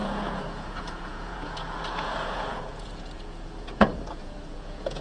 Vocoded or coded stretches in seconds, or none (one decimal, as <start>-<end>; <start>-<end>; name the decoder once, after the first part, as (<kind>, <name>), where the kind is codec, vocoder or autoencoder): 0.0-5.0 (vocoder, Vocos)